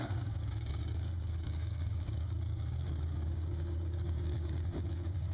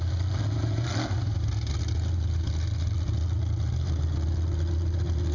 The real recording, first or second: second